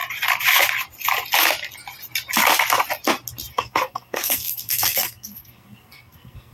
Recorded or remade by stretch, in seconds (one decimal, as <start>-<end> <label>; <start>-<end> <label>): 0.0-3.5 recorded; 3.5-6.5 remade